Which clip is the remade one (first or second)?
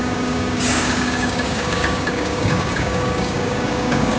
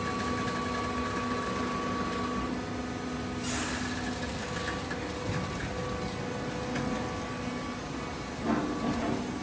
first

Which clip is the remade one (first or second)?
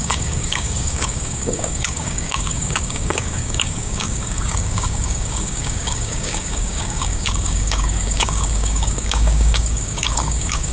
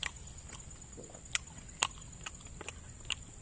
first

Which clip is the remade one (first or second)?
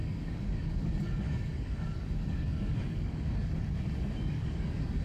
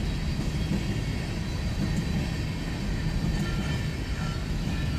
first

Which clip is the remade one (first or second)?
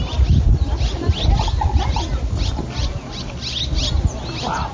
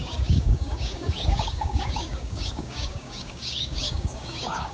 second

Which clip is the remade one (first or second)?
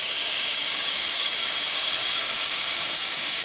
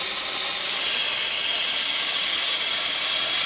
first